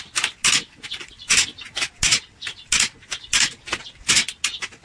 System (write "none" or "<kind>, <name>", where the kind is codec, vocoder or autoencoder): none